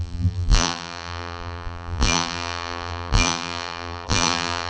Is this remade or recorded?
remade